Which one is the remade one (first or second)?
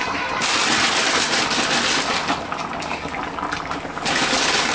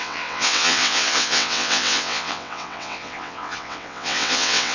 second